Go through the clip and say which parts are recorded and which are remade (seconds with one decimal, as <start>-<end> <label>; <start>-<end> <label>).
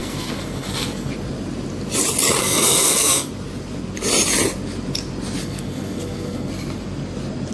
0.0-1.1 remade; 1.1-2.4 recorded; 2.4-3.3 remade; 3.3-5.4 recorded; 5.4-6.5 remade; 6.5-7.5 recorded